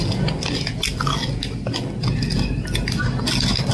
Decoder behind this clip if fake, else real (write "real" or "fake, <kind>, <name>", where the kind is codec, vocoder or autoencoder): real